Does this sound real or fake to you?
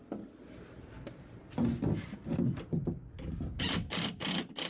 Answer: real